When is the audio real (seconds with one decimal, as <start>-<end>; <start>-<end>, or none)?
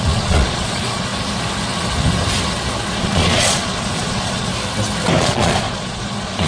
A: 1.1-3.0; 4.5-5.2